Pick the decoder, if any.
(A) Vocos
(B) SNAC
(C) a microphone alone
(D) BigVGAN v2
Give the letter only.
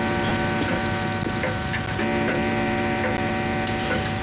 C